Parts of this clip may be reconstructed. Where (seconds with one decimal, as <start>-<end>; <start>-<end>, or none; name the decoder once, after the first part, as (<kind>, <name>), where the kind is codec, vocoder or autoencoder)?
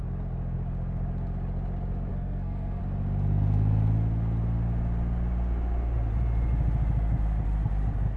2.1-2.8 (codec, SNAC)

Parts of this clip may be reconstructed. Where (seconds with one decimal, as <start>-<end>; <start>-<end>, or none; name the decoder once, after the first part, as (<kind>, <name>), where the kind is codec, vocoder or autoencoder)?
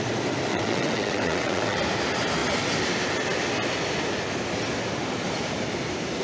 0.5-1.8 (vocoder, WaveNeXt)